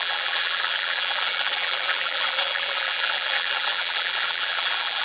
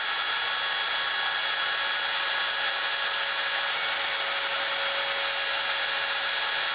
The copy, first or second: first